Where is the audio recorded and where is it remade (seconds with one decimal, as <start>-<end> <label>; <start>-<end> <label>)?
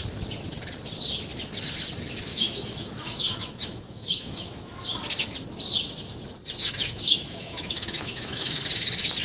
0.0-2.3 recorded; 2.3-4.8 remade; 4.8-6.6 recorded; 6.6-8.6 remade; 8.6-9.2 recorded